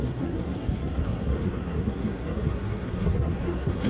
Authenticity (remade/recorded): remade